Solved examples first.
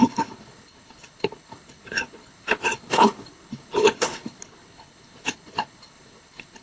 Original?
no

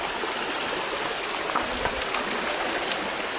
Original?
yes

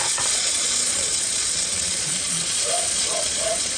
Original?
no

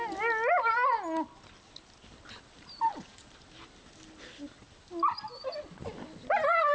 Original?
yes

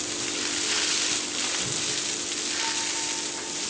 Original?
yes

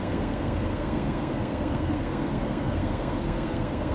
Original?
no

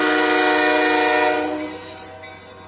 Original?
yes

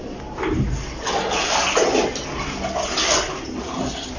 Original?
yes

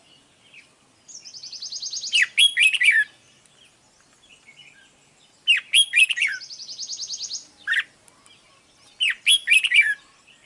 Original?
yes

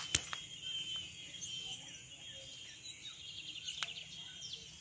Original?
yes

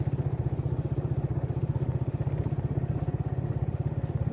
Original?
yes